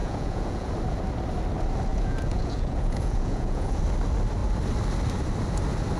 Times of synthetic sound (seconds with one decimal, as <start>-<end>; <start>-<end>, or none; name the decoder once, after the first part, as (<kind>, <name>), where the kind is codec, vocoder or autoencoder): 0.0-0.7 (vocoder, Vocos); 1.9-3.8